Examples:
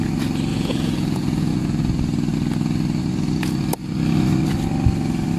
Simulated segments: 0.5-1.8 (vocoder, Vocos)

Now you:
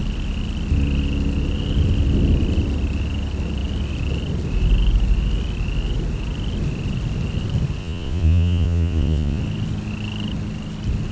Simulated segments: 7.8-9.4 (vocoder, Vocos)

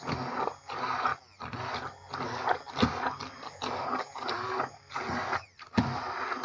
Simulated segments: none